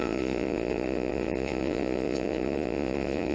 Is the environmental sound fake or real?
fake